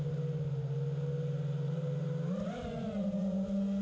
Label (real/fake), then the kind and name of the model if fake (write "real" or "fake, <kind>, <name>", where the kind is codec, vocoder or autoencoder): real